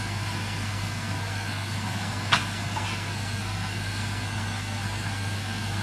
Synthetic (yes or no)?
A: yes